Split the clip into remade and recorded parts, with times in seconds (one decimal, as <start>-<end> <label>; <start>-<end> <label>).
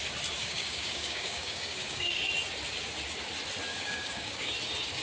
0.0-0.4 recorded; 0.4-2.3 remade; 2.3-3.7 recorded; 3.7-4.5 remade; 4.5-5.0 recorded